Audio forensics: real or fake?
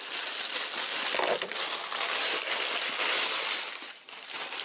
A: real